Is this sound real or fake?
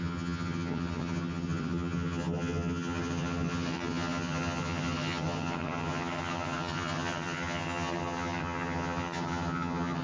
fake